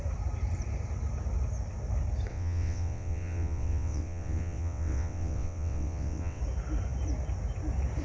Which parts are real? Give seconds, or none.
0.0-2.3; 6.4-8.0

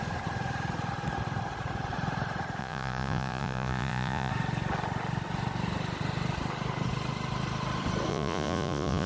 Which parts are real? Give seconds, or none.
0.0-2.6; 4.3-8.1